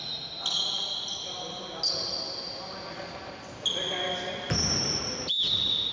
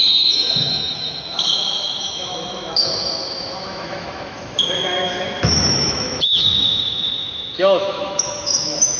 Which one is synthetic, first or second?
second